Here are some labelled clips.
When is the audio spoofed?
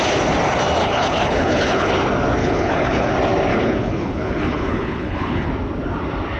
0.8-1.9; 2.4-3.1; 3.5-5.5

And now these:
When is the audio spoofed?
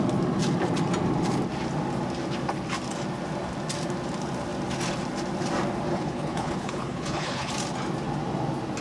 5.9-7.5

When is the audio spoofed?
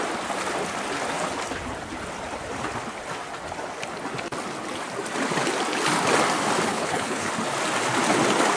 6.7-7.3